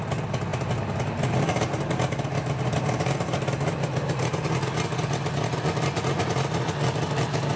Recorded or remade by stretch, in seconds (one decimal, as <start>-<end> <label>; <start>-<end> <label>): 0.0-7.6 recorded